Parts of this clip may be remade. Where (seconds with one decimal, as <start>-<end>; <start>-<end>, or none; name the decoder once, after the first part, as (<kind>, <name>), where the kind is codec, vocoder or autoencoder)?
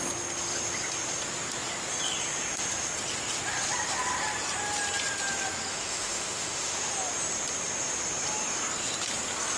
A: 5.7-6.9 (autoencoder, DAC-VAE)